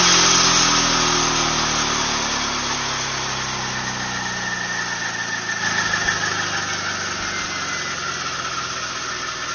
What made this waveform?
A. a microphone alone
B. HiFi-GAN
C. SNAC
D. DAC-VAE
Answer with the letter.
A